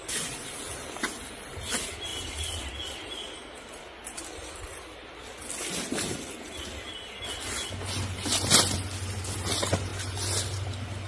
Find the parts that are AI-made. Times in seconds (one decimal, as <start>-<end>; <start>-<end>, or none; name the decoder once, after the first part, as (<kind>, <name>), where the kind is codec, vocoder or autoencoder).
none

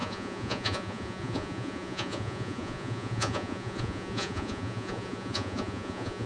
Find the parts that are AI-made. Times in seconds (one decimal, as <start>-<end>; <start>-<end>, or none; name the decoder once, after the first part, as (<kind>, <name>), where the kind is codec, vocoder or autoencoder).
0.0-6.3 (vocoder, Vocos)

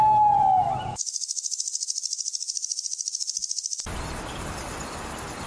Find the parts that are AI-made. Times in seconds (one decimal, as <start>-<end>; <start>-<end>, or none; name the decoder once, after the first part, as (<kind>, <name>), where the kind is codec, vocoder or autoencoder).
0.9-1.6 (autoencoder, DAC-VAE)

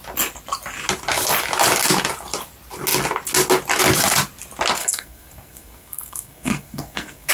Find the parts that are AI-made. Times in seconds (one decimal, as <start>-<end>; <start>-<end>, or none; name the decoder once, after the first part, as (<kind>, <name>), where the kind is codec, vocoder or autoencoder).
4.8-7.3 (codec, SNAC)

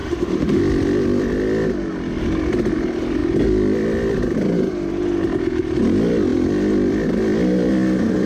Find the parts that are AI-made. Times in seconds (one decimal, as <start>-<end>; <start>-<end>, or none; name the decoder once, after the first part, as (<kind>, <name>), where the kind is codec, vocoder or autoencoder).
0.0-0.6 (autoencoder, DAC-VAE)

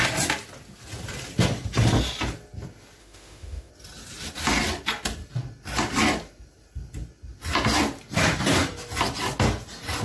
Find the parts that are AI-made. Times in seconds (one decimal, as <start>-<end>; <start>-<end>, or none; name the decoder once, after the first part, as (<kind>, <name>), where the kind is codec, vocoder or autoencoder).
3.0-3.7 (autoencoder, DAC-VAE)